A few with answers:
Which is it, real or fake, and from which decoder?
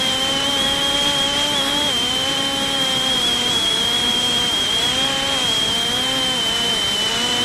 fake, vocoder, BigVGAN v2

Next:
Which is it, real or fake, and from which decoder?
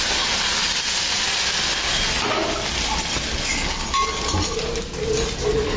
real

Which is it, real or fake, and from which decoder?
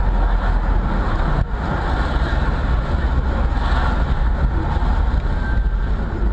real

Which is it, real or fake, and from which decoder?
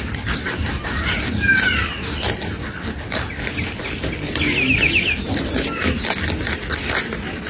real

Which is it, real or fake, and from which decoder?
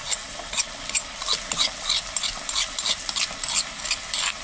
real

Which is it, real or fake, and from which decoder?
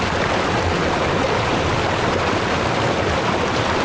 real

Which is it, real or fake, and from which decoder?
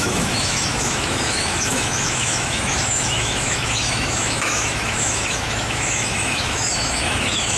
fake, autoencoder, DAC-VAE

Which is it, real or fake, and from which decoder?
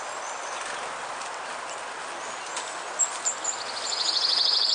real